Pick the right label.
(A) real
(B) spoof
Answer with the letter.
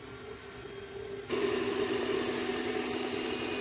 A